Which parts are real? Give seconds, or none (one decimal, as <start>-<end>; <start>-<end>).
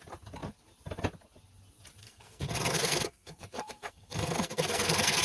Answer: 0.0-2.0